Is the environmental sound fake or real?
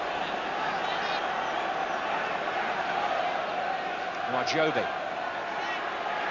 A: real